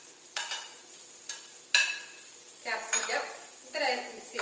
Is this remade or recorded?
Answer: recorded